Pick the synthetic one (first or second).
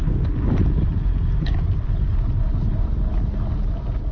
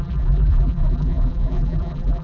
second